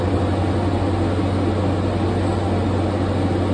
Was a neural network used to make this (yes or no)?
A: no